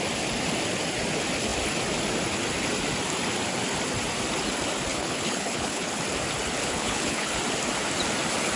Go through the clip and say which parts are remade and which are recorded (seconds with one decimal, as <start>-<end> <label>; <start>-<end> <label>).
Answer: 0.0-4.9 recorded; 4.9-6.0 remade; 6.0-6.6 recorded; 6.6-7.4 remade; 7.4-8.6 recorded